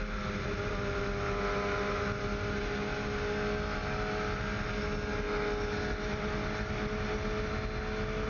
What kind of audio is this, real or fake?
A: real